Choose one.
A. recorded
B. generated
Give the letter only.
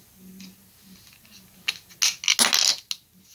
A